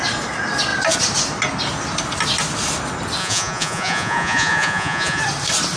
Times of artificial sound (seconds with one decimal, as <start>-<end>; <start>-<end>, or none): 3.2-5.2